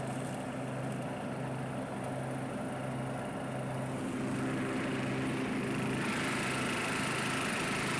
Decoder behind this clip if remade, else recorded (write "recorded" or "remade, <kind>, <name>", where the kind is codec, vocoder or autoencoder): recorded